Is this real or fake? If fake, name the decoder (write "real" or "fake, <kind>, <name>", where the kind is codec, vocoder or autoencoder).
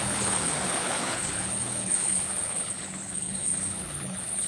fake, codec, HILCodec